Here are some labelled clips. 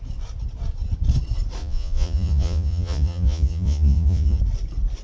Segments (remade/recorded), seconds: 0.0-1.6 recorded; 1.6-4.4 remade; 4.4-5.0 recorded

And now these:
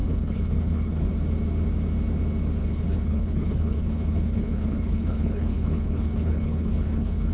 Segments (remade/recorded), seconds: 0.0-1.1 remade; 1.1-2.6 recorded; 2.6-7.3 remade

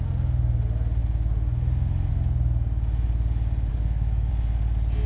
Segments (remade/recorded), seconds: 0.0-3.7 recorded; 3.7-4.3 remade; 4.3-5.1 recorded